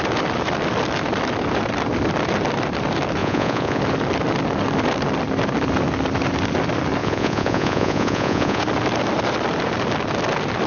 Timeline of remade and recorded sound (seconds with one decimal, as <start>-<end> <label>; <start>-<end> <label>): 0.0-3.2 recorded; 3.2-3.8 remade; 3.8-7.0 recorded; 7.0-8.6 remade; 8.6-10.7 recorded